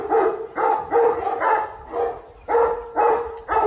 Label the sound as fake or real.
real